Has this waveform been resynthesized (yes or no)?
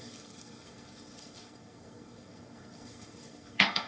yes